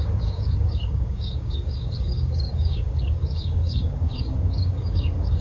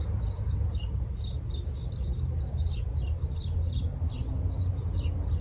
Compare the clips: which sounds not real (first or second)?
first